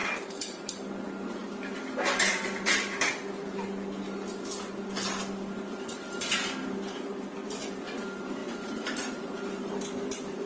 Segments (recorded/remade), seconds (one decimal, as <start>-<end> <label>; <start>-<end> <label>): 0.0-0.9 remade; 0.9-8.4 recorded; 8.4-9.8 remade; 9.8-10.5 recorded